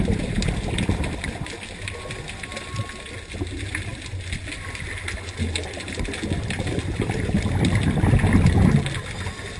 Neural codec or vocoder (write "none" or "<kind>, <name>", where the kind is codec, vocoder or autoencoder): none